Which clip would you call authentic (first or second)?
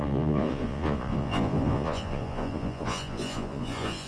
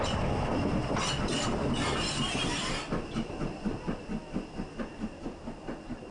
second